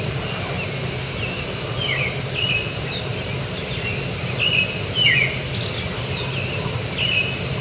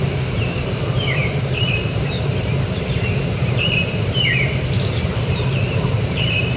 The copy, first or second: second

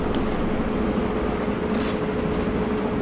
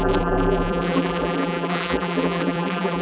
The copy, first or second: second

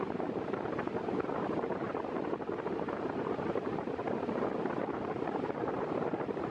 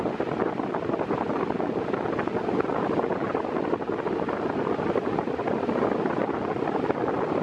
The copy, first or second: first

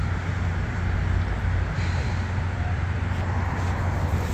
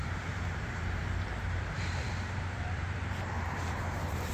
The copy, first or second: second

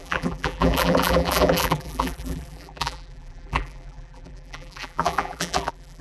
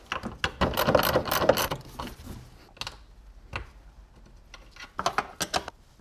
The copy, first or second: first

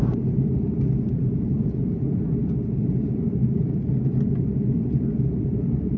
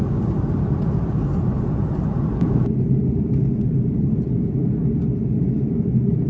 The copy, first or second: first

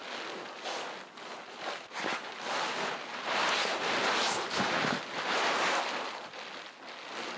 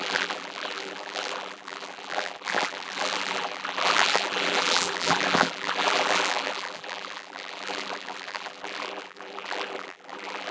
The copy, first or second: second